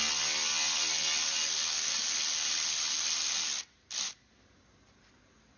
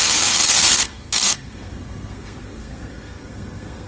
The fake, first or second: second